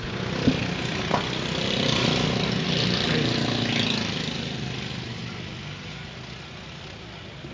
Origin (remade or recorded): recorded